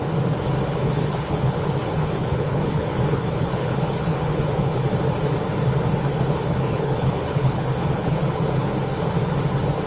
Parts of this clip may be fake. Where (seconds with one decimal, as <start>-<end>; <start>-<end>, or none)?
0.8-4.8; 6.1-8.4